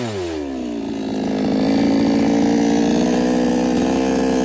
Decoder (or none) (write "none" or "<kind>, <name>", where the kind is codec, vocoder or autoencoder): none